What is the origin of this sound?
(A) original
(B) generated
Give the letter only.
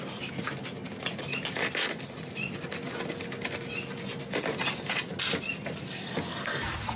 A